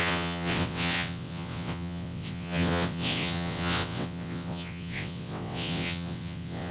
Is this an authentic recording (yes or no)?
no